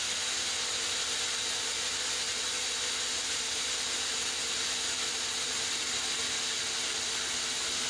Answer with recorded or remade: recorded